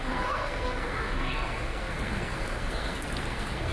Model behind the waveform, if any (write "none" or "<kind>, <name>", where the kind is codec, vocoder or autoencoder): codec, SNAC